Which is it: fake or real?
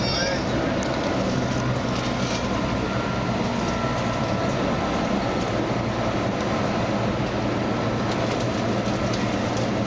real